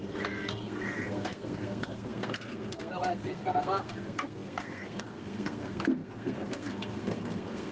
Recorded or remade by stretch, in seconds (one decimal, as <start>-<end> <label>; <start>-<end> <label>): 0.0-7.7 remade